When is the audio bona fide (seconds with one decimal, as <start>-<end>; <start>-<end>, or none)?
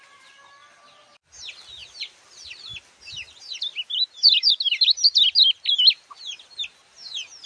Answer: 0.0-1.8; 2.8-3.7; 4.5-7.5